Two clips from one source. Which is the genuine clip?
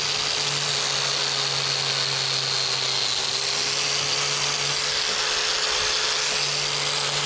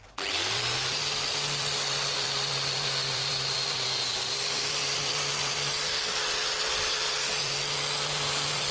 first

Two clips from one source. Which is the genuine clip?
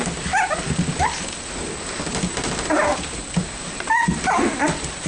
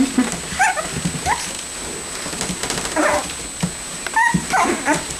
second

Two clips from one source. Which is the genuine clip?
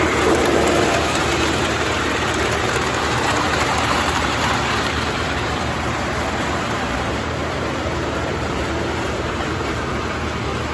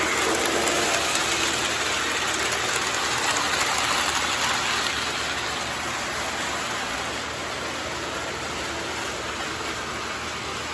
second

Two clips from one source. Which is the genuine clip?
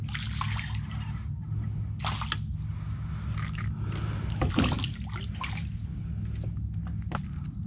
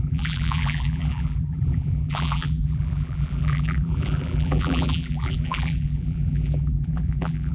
first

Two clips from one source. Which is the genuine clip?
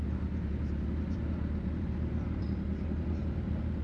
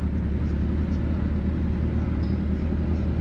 second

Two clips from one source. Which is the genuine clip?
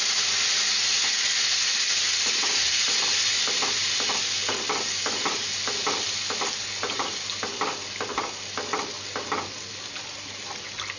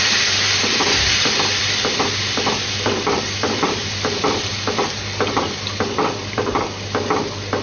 first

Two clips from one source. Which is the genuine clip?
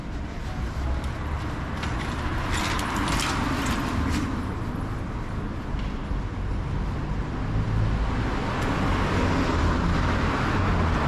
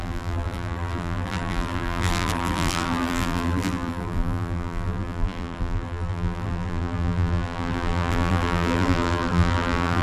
first